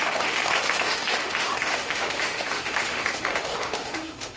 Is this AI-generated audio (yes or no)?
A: yes